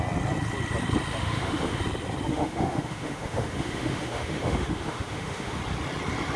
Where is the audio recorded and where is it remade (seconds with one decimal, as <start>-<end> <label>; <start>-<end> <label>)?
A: 0.0-1.2 recorded; 1.2-1.8 remade; 1.8-2.3 recorded; 2.3-5.6 remade; 5.6-6.4 recorded